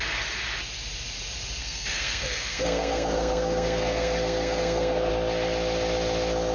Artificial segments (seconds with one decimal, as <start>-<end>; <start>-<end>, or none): 1.6-5.1